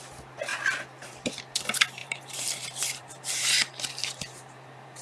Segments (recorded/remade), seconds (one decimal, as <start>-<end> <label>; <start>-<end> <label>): 0.0-0.5 recorded; 0.5-1.4 remade; 1.4-2.0 recorded; 2.0-5.0 remade